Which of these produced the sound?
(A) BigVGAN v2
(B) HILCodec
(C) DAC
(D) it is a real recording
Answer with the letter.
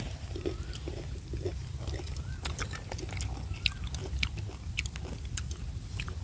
D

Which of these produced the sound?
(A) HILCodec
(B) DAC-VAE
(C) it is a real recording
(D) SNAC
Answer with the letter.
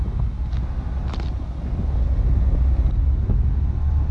C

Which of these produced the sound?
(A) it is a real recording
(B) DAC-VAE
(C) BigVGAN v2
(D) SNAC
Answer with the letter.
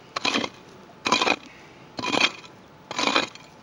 A